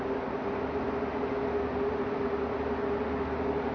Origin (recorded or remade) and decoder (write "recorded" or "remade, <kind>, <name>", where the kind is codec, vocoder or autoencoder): recorded